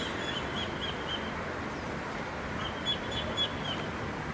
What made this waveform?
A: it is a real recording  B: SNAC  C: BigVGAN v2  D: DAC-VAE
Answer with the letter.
A